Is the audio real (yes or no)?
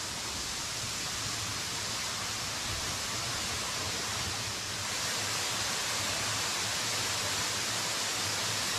yes